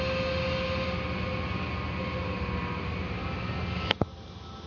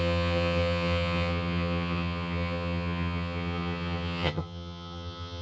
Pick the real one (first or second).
first